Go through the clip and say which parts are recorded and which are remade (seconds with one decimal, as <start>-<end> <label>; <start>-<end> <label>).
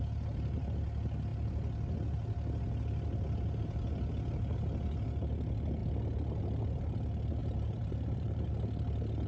0.0-7.4 recorded; 7.4-8.5 remade; 8.5-9.3 recorded